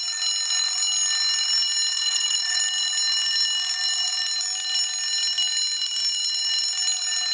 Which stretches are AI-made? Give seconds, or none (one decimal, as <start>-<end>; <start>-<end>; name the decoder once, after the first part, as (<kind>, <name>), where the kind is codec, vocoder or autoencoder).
1.9-2.6 (vocoder, Vocos)